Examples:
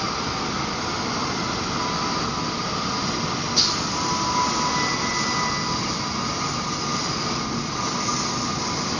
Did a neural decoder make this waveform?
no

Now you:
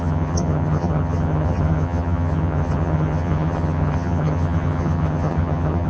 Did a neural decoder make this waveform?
yes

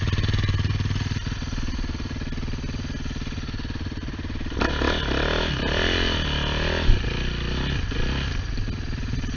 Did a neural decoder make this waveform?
no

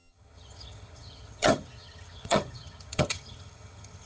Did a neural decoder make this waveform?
yes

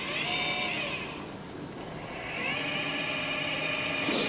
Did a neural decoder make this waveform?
no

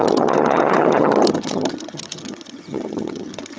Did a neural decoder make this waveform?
yes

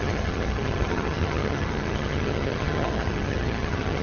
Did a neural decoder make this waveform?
yes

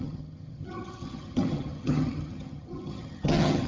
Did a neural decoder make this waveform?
yes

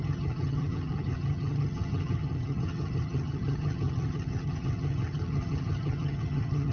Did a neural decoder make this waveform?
yes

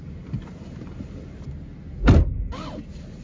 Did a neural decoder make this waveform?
no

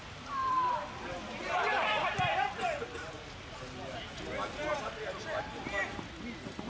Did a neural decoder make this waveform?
no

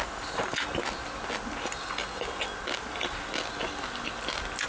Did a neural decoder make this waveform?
no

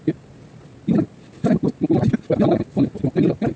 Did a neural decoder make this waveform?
no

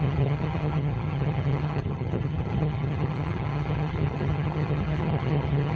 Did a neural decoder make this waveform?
yes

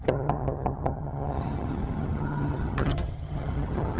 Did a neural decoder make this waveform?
yes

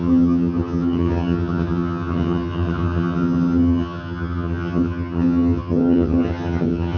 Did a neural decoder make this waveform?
yes